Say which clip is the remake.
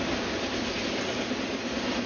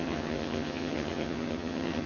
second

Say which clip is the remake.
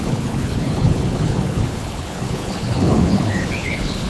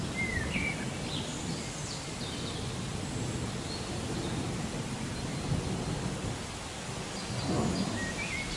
first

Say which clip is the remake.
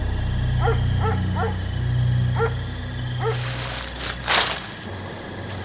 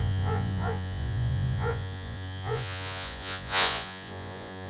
second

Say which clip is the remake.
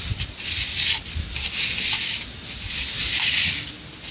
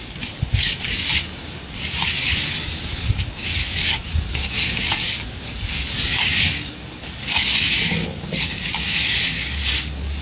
second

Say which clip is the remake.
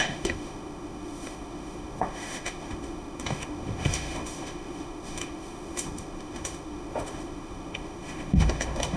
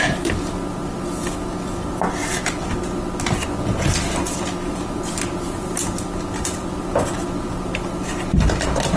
first